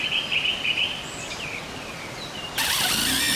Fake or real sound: real